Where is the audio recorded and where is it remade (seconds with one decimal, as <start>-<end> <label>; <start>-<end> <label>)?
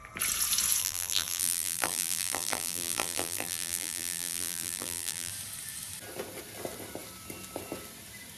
0.0-0.8 recorded; 0.8-5.3 remade; 5.3-8.4 recorded